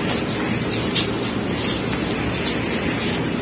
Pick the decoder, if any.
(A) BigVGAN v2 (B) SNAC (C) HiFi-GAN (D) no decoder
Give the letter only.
D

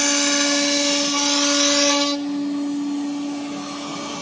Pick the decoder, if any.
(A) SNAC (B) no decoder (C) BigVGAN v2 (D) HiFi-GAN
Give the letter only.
B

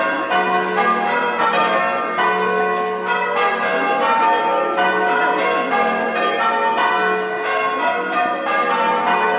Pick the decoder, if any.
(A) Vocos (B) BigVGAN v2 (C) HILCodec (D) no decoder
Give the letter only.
D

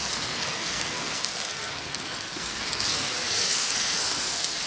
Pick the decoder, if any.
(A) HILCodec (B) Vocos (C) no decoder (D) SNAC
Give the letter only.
D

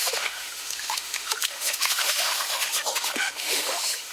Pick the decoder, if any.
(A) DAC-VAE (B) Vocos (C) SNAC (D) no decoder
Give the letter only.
A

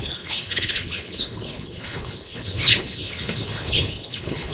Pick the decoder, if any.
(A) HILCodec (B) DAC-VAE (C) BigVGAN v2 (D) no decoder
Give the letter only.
A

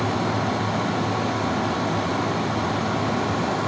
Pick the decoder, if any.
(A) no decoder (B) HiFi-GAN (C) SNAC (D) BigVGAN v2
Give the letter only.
A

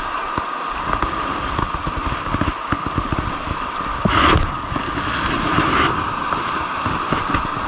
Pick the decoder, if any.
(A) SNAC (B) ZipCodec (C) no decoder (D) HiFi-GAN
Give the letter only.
C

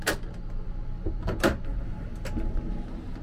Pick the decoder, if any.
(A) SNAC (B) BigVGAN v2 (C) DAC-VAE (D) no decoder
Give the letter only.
D